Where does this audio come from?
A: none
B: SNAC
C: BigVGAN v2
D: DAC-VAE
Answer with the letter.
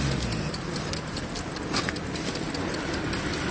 A